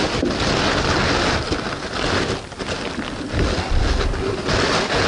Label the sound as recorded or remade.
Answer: recorded